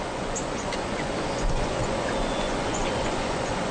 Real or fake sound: fake